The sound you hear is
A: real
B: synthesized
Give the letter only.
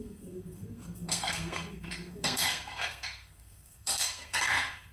B